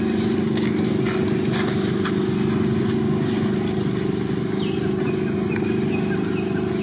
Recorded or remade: recorded